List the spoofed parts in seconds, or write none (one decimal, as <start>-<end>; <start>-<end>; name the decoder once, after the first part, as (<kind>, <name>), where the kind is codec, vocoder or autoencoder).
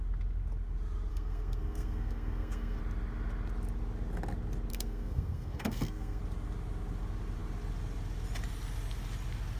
1.1-2.8 (codec, SNAC); 4.7-6.2